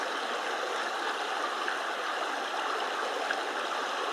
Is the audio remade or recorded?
recorded